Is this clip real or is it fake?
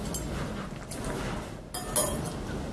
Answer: real